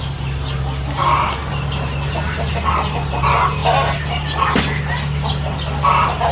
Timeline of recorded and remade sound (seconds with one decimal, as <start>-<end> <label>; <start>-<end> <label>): 0.0-6.3 recorded